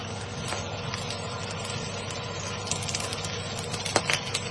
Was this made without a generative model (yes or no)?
yes